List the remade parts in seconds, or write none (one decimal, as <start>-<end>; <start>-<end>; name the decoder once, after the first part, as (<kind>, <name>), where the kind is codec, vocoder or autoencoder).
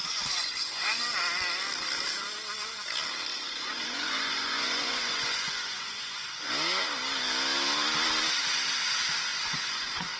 0.0-1.0 (vocoder, Vocos); 3.3-6.5; 9.3-10.2